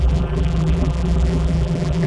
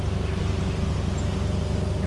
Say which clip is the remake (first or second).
first